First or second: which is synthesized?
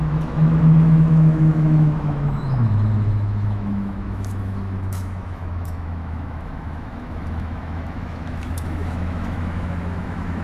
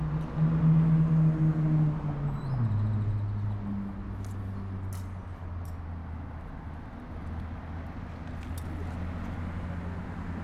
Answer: first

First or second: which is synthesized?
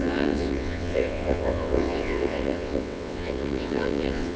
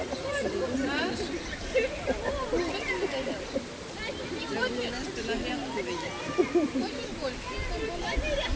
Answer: first